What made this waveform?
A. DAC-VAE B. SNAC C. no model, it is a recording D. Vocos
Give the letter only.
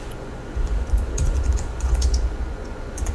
D